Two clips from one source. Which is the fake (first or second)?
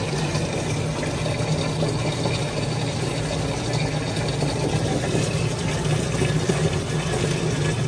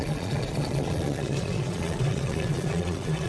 second